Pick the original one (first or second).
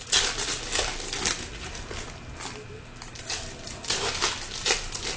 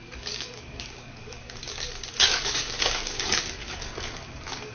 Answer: first